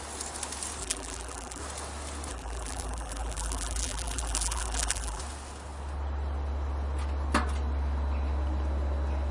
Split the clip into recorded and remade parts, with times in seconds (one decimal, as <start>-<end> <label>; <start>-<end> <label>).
0.0-0.8 recorded; 0.8-1.6 remade; 1.6-2.3 recorded; 2.3-5.2 remade; 5.2-9.3 recorded